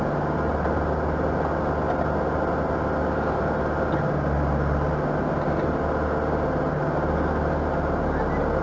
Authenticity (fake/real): real